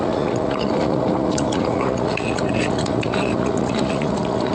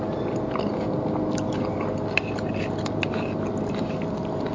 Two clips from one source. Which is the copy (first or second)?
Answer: first